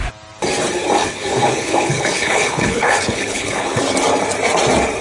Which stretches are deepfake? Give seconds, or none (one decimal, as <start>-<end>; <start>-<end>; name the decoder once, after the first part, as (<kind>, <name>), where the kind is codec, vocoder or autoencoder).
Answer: 1.0-3.8 (codec, HILCodec)